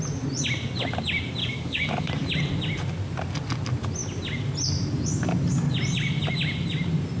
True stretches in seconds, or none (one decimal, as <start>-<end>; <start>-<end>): 0.0-1.4; 2.1-7.2